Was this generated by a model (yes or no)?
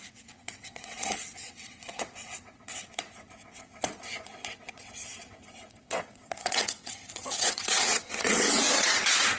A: yes